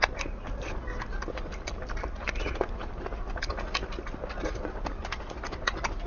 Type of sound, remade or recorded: recorded